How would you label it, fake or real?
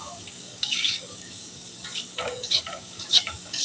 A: fake